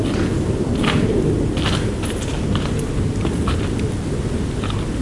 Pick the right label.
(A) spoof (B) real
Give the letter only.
B